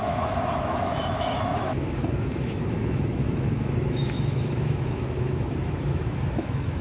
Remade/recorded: remade